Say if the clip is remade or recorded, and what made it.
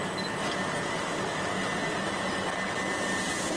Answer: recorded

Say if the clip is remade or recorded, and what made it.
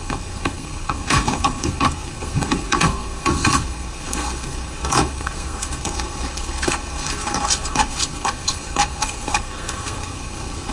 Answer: remade, codec, SNAC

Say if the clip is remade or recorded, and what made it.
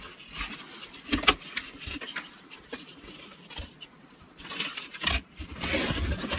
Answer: recorded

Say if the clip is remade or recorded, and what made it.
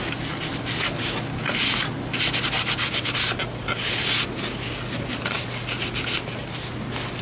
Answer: recorded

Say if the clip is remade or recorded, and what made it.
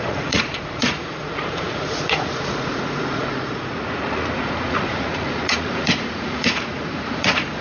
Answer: remade, vocoder, Vocos